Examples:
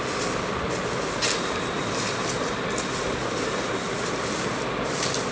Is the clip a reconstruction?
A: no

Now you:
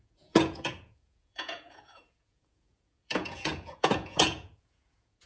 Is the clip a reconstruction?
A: yes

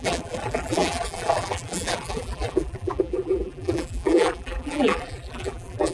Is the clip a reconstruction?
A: yes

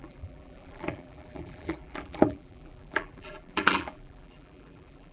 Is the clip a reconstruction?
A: yes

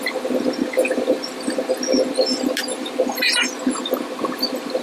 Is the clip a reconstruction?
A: no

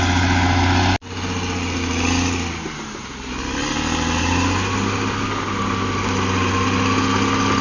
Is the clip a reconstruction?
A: no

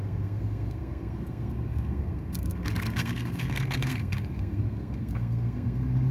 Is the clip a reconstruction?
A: yes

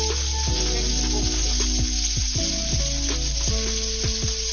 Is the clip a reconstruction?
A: no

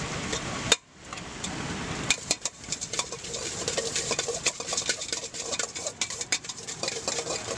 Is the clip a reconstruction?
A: yes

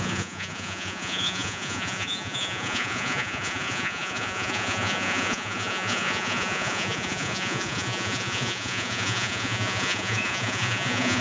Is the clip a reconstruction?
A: yes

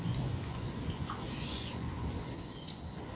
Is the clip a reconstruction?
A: yes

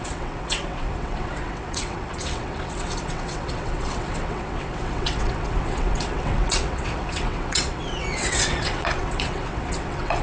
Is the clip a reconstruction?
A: yes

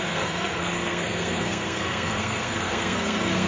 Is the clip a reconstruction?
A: yes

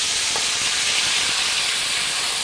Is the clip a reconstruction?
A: no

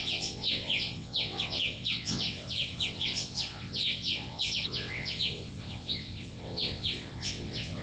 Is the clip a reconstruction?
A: yes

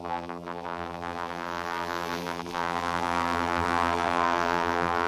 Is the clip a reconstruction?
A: yes